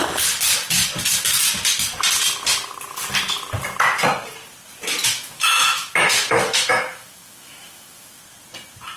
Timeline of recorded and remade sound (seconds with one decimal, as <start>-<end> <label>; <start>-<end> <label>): 0.0-5.0 recorded; 5.0-8.2 remade; 8.2-9.0 recorded